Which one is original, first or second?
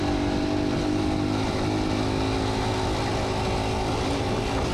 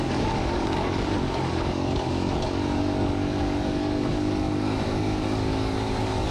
first